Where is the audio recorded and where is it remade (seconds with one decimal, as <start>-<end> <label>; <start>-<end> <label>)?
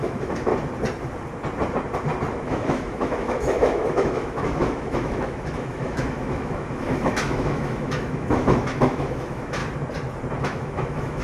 0.0-0.5 remade; 0.5-2.3 recorded; 2.3-9.6 remade; 9.6-10.4 recorded; 10.4-11.2 remade